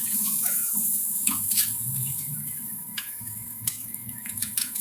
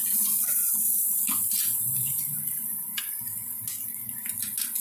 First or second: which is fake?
first